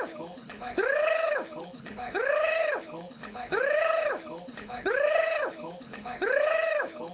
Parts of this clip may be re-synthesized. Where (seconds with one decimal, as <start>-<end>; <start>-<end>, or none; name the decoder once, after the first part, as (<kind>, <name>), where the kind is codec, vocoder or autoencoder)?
0.0-7.1 (codec, HILCodec)